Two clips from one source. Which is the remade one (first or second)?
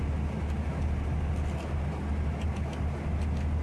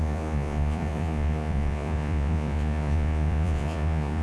second